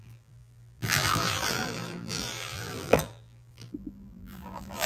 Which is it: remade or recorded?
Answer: remade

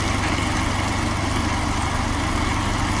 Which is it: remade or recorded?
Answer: recorded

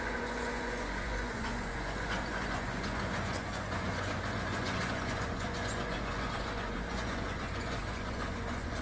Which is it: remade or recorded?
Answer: remade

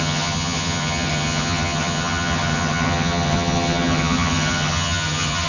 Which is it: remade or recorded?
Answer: remade